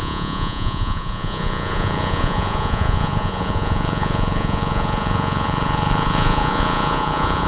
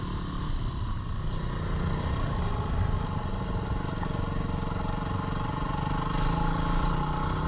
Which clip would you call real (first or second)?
second